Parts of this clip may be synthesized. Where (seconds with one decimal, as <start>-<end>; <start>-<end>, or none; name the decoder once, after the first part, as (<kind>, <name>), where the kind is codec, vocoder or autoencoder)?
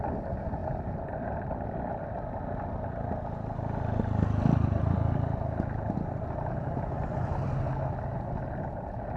none